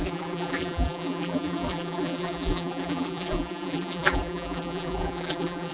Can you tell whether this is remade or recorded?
remade